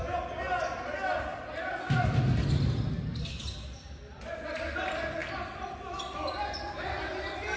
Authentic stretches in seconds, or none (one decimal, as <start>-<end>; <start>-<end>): 0.0-7.6